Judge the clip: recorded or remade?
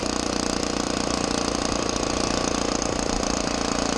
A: recorded